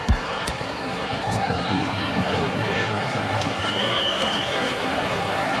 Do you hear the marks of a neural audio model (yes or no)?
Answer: yes